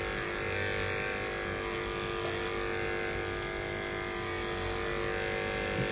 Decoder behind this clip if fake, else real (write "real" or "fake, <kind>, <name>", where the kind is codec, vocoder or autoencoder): real